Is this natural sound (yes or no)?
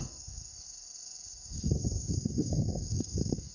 no